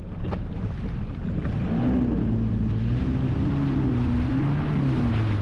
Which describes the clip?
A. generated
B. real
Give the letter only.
B